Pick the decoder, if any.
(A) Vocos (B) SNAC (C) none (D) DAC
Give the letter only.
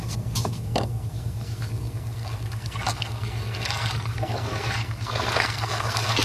B